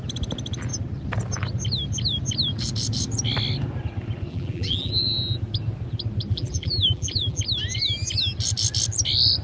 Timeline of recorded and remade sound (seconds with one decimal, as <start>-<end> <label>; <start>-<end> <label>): 0.0-4.3 recorded; 4.3-4.9 remade; 4.9-6.3 recorded; 6.3-7.4 remade; 7.4-9.4 recorded